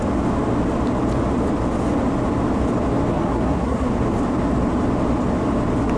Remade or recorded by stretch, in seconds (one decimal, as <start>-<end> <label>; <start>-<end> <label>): 0.0-3.1 recorded; 3.1-3.9 remade; 3.9-6.0 recorded